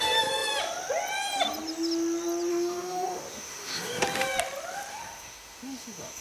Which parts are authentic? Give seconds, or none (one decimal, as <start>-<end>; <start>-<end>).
0.0-2.5; 4.0-4.9

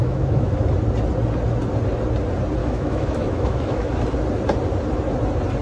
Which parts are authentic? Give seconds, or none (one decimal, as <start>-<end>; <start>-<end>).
0.5-2.6; 3.9-5.6